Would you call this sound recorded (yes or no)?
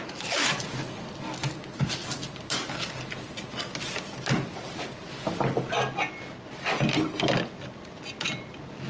yes